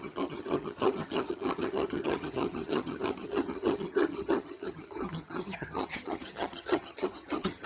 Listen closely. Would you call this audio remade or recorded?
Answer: remade